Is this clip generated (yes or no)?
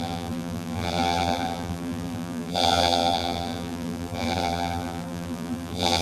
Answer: yes